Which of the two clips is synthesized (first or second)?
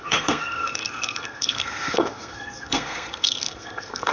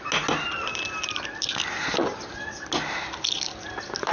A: first